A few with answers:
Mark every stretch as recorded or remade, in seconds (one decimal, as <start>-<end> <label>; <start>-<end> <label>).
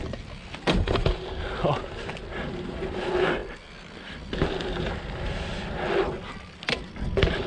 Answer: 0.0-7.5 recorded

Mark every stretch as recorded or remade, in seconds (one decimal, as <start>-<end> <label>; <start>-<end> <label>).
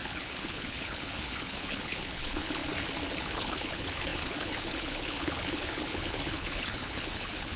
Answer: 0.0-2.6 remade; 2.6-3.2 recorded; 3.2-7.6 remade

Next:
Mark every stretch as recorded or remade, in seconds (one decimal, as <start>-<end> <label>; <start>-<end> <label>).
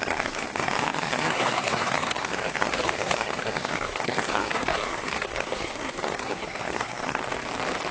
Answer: 0.0-7.2 remade; 7.2-7.9 recorded